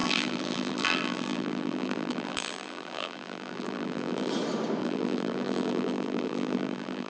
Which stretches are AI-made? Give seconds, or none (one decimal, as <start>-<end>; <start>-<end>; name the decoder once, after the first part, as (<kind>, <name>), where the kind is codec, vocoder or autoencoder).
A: 0.0-4.3 (vocoder, BigVGAN v2); 4.8-7.1